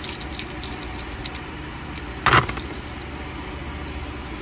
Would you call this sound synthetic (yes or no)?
no